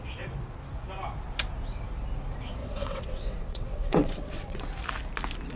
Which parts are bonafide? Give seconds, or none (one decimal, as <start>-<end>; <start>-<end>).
0.0-2.6; 4.6-5.6